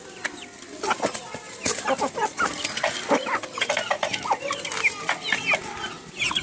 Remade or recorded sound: recorded